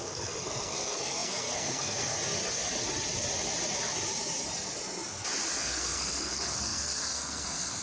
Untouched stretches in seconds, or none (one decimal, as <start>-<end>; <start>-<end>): 2.1-5.6